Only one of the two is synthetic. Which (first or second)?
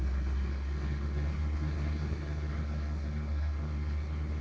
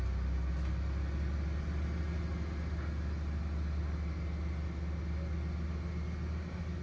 first